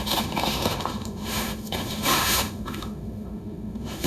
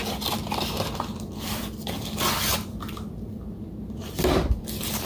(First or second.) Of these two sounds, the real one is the second